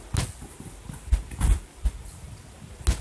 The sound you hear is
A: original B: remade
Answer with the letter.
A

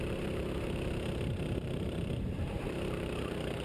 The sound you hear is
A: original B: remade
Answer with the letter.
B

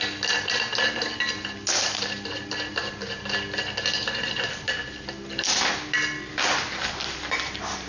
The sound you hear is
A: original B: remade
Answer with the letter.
A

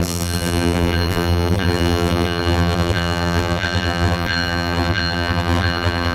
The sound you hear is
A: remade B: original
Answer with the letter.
A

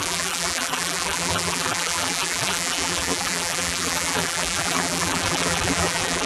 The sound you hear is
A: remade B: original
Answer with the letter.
A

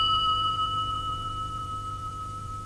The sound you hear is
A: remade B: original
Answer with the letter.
A